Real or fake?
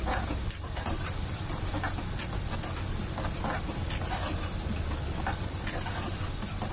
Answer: real